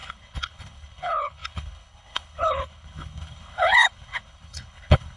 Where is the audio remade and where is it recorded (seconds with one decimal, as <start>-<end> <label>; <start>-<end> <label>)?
0.0-5.2 remade